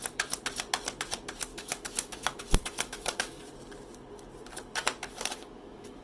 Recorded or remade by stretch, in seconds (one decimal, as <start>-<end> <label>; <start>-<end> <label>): 0.0-1.5 recorded; 1.5-3.4 remade; 3.4-5.1 recorded; 5.1-6.0 remade